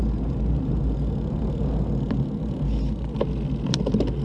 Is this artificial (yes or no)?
no